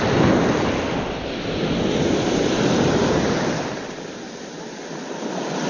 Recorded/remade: recorded